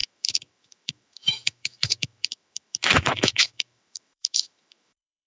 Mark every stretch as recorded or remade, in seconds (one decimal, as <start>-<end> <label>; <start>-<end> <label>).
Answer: 0.0-5.3 remade